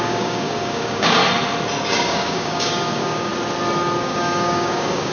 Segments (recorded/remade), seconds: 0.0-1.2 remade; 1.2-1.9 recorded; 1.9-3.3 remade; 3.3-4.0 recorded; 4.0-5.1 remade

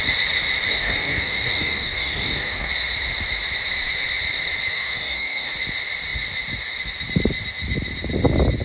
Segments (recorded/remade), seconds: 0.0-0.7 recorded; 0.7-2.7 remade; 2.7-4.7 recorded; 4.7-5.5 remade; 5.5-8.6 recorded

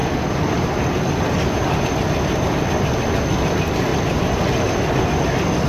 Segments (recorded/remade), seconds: 0.0-5.7 recorded

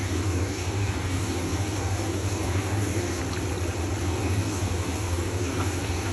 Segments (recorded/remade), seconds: 0.0-3.2 remade; 3.2-4.0 recorded; 4.0-6.1 remade

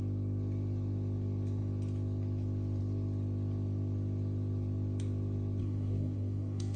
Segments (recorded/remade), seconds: 0.0-5.6 recorded; 5.6-6.8 remade

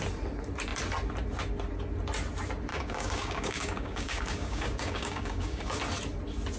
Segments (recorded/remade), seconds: 0.0-2.7 recorded; 2.7-5.8 remade; 5.8-6.6 recorded